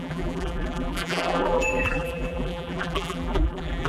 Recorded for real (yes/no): no